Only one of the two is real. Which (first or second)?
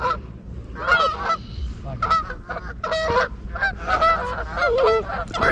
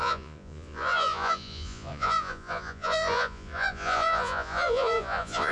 first